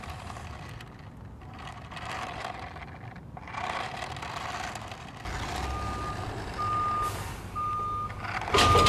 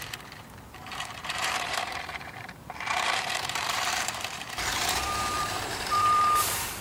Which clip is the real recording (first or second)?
first